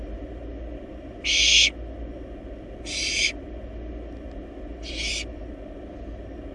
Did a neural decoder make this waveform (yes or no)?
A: no